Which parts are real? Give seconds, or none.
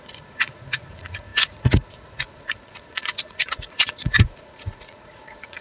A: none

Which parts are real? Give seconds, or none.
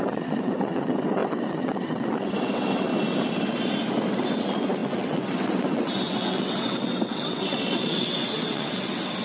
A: 2.9-4.1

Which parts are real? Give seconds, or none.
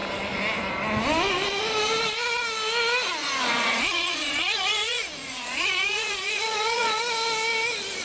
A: 0.0-3.2; 7.0-8.0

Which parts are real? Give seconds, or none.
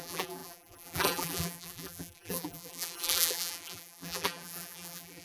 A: none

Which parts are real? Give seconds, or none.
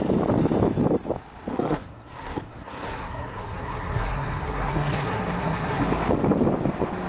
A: 0.0-1.5; 5.8-7.1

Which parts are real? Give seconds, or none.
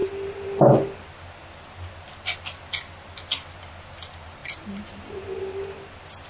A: 0.0-4.4; 5.2-6.3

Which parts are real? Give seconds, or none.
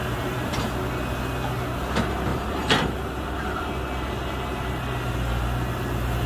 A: 0.6-2.3; 4.7-6.3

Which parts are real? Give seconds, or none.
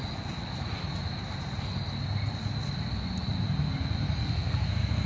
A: 0.0-4.2